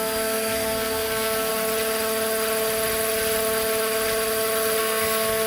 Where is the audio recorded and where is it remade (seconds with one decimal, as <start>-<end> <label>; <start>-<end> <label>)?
0.0-1.5 remade; 1.5-4.8 recorded; 4.8-5.5 remade